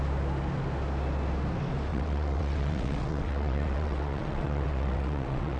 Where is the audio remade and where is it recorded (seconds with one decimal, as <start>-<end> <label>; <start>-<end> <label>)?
0.0-1.9 recorded; 1.9-5.6 remade